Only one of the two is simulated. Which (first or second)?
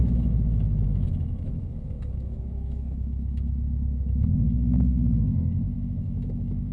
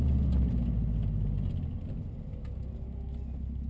first